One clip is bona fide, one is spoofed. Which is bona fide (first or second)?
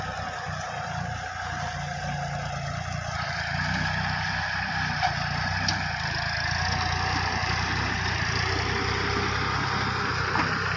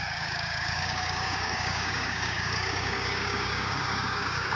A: first